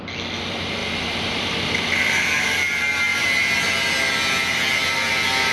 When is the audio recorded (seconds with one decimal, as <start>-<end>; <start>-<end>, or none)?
0.0-0.8; 1.4-5.5

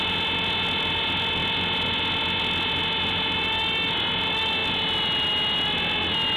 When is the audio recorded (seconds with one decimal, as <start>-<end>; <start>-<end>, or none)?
0.0-6.4

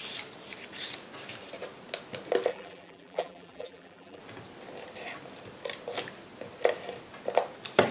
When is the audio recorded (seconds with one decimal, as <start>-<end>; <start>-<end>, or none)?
0.0-2.5; 4.2-7.9

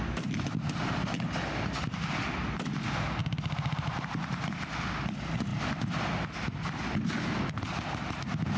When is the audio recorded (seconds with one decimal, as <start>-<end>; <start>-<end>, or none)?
0.0-3.2; 4.5-8.6